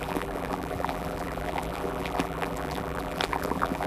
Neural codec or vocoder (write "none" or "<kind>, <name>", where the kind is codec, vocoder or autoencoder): vocoder, BigVGAN v2